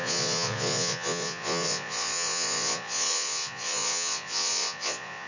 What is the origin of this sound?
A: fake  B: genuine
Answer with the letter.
A